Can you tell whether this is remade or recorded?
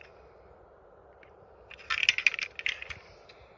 recorded